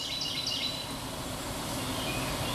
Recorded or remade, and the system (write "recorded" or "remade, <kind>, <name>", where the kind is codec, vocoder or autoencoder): recorded